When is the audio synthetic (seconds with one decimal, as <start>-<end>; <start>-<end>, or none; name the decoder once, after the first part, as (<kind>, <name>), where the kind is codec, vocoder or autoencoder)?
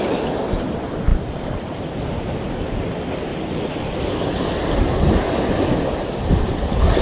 3.3-6.5 (vocoder, BigVGAN v2)